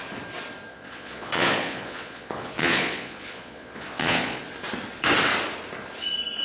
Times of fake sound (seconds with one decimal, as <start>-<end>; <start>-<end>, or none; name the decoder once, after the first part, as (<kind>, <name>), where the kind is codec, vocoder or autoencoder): 0.7-4.4 (vocoder, Vocos)